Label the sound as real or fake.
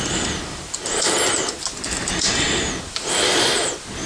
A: real